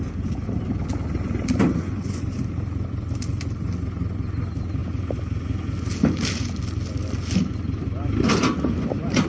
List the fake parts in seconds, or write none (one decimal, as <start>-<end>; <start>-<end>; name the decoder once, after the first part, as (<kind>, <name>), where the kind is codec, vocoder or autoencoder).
none